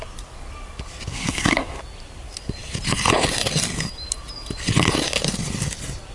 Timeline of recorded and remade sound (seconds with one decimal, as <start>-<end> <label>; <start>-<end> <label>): 0.0-1.1 recorded; 1.1-1.8 remade; 1.8-6.1 recorded